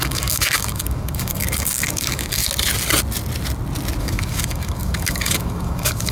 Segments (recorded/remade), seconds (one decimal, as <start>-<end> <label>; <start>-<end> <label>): 0.0-2.4 remade; 2.4-4.0 recorded; 4.0-6.1 remade